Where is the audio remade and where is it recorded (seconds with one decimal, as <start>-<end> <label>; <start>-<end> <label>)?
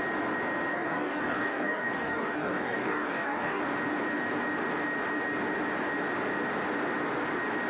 0.0-0.7 recorded; 0.7-3.6 remade; 3.6-7.7 recorded